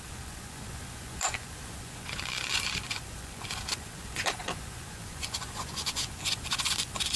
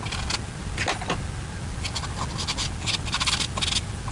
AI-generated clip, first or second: first